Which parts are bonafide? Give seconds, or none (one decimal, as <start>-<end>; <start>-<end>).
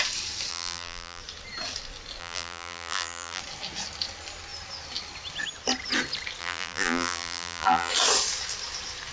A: 0.0-0.5; 1.2-2.2; 3.4-6.4; 7.9-9.1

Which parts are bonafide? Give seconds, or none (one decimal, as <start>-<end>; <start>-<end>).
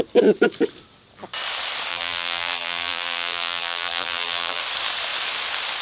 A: 0.0-1.9; 4.6-5.8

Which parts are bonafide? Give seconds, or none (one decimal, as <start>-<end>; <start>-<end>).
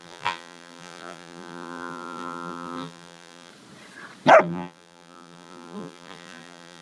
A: 3.5-4.4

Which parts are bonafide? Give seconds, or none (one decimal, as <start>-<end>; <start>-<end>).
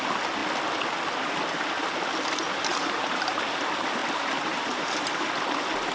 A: 0.0-2.7; 3.6-4.0; 5.3-5.9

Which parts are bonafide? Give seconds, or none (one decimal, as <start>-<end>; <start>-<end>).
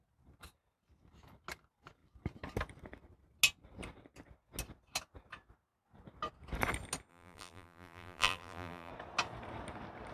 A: 0.0-7.1; 8.9-10.1